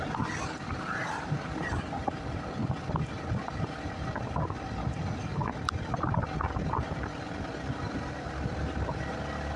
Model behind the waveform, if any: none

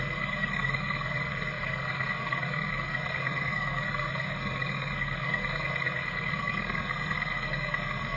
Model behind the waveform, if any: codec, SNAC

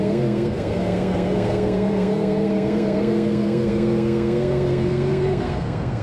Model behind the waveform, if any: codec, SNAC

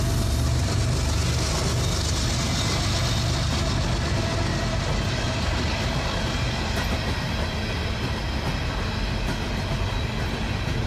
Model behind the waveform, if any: none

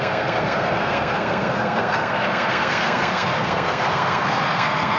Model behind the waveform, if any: codec, SNAC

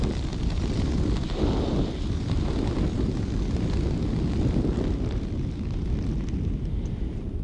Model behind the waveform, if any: none